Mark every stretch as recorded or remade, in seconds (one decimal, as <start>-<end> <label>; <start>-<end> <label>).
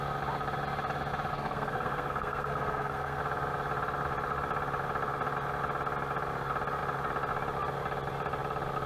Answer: 0.0-1.3 recorded; 1.3-3.2 remade; 3.2-8.9 recorded